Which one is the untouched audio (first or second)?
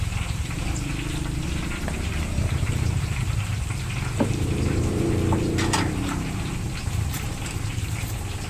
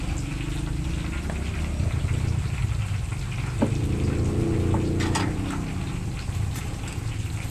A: second